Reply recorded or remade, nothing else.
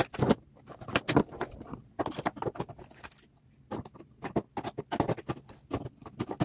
recorded